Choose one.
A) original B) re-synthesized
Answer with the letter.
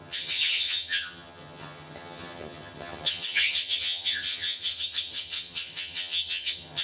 B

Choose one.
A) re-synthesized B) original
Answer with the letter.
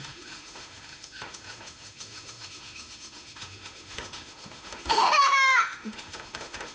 A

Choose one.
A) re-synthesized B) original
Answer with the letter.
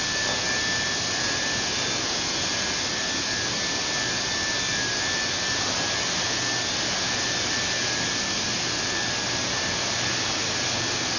B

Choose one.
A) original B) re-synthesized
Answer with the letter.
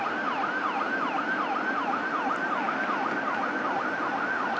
A